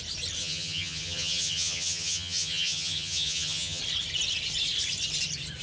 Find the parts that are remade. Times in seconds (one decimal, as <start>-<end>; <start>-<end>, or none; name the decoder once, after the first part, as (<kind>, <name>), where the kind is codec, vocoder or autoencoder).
0.4-3.8 (vocoder, HiFi-GAN)